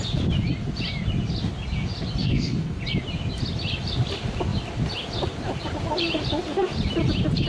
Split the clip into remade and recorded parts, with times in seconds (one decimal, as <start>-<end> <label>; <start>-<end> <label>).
0.0-2.2 recorded; 2.2-2.8 remade; 2.8-7.5 recorded